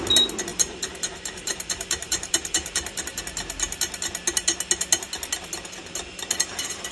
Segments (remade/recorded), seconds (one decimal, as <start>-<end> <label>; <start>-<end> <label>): 0.0-0.5 recorded; 0.5-3.2 remade; 3.2-6.9 recorded